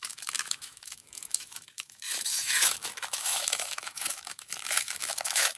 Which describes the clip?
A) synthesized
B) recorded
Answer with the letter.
A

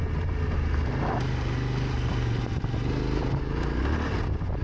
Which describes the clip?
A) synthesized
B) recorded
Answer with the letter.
B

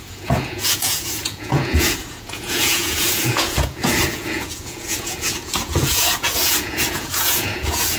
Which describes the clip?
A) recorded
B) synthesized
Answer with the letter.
B